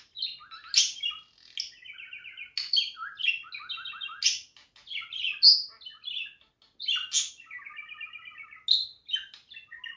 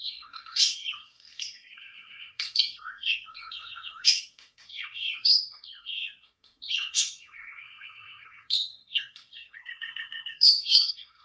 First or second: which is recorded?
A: first